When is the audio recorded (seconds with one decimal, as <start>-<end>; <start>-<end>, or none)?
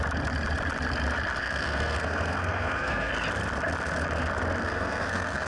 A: 0.0-1.4; 3.1-4.6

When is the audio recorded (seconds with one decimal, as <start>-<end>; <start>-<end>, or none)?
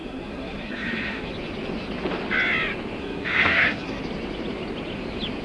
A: 1.3-3.0; 4.0-5.4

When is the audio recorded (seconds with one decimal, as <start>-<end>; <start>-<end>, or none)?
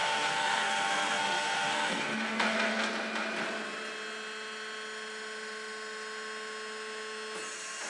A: 2.9-7.9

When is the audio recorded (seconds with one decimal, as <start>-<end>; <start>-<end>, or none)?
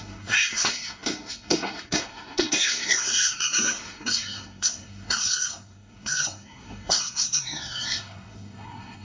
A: none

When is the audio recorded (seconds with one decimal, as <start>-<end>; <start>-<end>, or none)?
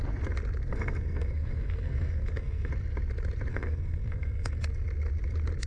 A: 0.0-0.7; 2.7-3.5; 4.6-5.7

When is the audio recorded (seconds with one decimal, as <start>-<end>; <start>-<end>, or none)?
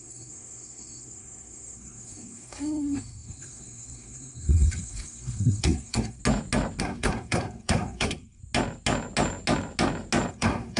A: 6.2-6.8; 8.4-10.3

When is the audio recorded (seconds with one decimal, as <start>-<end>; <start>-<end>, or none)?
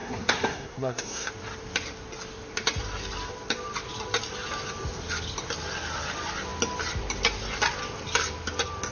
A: 1.3-8.9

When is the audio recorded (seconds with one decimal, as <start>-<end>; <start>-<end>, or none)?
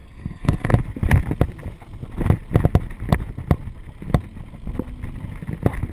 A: 0.7-5.9